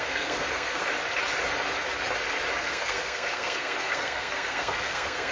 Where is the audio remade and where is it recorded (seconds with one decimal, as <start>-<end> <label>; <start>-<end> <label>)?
0.0-0.8 remade; 0.8-2.6 recorded; 2.6-5.3 remade